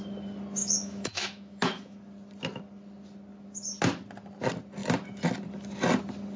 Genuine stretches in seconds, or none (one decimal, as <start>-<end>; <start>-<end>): 0.0-0.6; 2.0-6.4